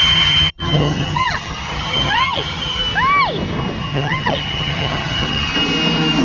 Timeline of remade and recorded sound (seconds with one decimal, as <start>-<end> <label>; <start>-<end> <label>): 0.0-2.8 remade; 2.8-3.8 recorded; 3.8-5.5 remade; 5.5-6.2 recorded